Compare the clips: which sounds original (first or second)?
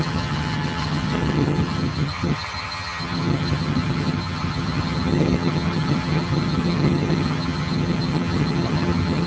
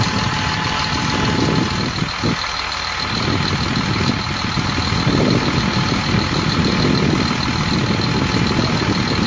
second